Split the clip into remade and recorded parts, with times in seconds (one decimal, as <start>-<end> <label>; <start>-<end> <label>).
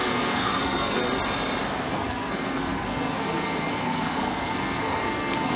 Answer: 0.0-1.0 remade; 1.0-1.9 recorded; 1.9-5.6 remade